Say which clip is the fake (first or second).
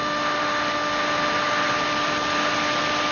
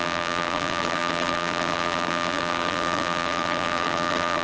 second